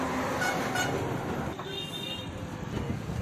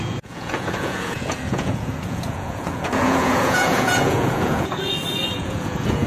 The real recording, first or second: first